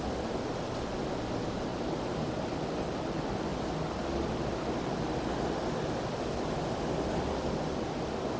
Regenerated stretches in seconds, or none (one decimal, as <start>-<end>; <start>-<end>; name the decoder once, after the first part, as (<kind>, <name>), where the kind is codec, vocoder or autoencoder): 1.7-2.3 (vocoder, BigVGAN v2)